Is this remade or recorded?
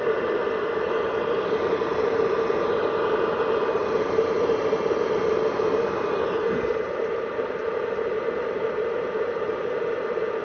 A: remade